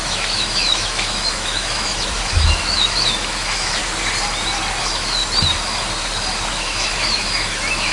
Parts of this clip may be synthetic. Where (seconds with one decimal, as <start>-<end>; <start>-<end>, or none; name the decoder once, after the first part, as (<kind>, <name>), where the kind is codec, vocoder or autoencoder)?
0.0-3.8 (autoencoder, DAC-VAE); 4.8-5.2; 6.5-7.9